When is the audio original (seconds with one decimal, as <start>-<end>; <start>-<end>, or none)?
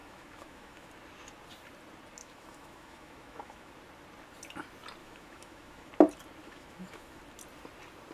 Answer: 0.9-2.2; 3.7-5.0; 5.9-6.4; 7.2-8.1